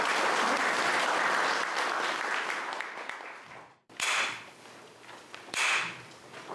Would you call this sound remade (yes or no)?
yes